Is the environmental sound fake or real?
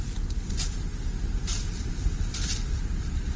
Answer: real